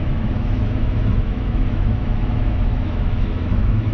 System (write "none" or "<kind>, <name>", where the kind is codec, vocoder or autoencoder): autoencoder, DAC-VAE